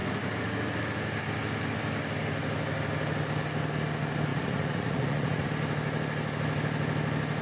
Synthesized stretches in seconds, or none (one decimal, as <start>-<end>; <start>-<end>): 4.3-5.5